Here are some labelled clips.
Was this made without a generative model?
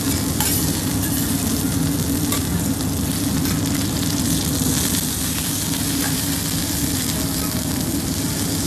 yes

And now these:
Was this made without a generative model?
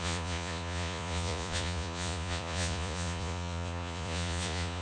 no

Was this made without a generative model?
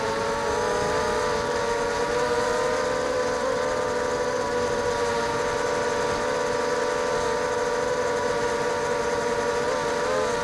yes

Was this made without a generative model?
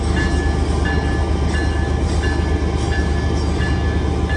yes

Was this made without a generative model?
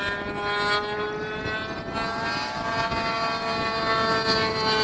yes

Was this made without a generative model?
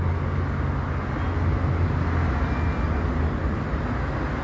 yes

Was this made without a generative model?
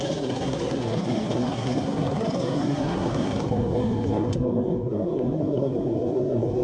no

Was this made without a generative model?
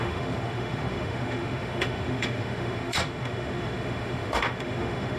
no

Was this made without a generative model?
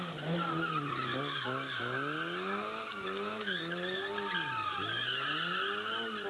yes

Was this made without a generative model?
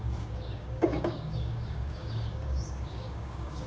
no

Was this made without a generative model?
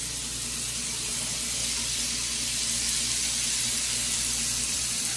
yes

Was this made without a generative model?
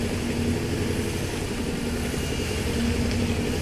yes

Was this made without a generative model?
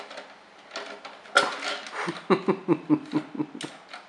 yes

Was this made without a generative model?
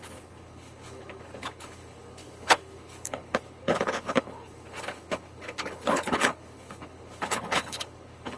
no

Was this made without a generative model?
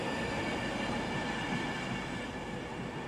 yes